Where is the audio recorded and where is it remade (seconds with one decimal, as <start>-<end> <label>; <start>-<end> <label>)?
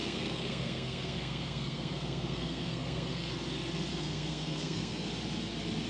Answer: 0.0-3.3 remade; 3.3-3.9 recorded; 3.9-5.1 remade; 5.1-5.9 recorded